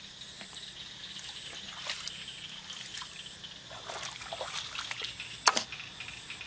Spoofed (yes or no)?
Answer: no